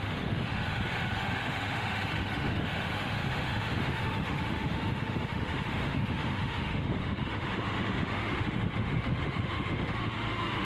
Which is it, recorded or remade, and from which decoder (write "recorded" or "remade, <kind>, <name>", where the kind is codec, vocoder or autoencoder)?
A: remade, autoencoder, DAC-VAE